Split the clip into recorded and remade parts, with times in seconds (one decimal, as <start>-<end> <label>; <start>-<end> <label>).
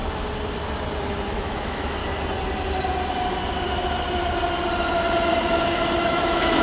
0.0-1.1 recorded; 1.1-2.0 remade; 2.0-6.0 recorded; 6.0-6.6 remade